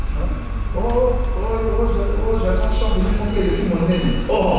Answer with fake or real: real